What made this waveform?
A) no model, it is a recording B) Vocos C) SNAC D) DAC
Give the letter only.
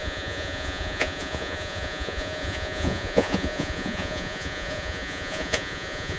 B